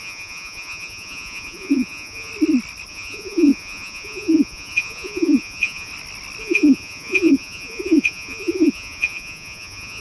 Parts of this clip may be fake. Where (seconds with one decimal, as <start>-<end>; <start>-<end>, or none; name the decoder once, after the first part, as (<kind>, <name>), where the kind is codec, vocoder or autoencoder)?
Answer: 0.0-2.3 (vocoder, Vocos); 2.9-5.9; 6.4-10.0